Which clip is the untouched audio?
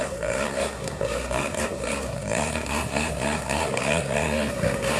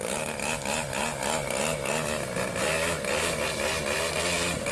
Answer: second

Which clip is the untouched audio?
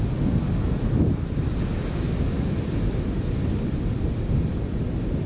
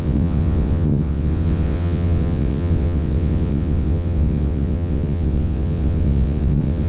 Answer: first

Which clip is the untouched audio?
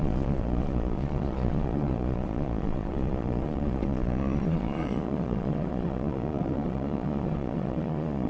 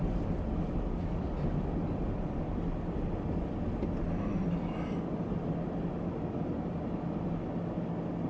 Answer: second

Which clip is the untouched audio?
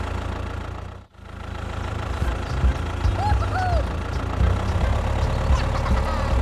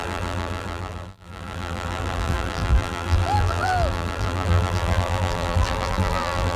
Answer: first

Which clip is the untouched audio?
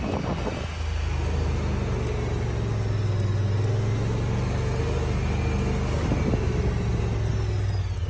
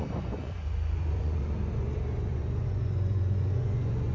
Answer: first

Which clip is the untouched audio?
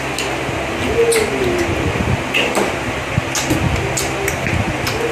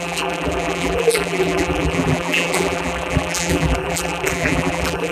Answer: first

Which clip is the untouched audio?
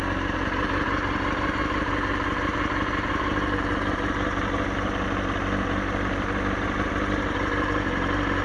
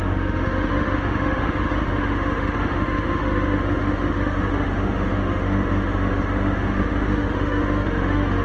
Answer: first